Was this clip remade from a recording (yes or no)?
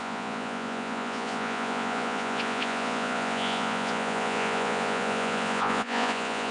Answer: yes